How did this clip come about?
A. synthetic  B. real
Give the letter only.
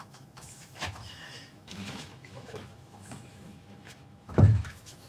A